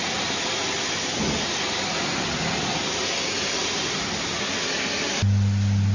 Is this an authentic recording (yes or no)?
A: yes